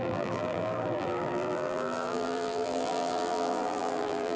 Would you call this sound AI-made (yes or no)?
yes